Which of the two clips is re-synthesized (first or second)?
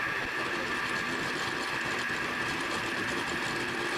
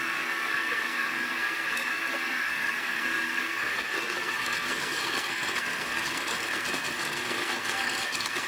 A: second